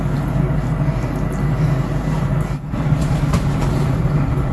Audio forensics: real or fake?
real